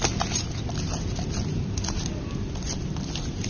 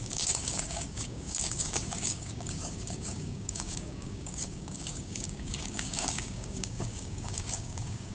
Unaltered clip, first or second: first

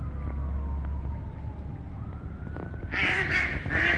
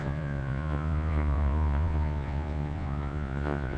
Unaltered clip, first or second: first